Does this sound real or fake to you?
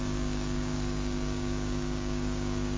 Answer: fake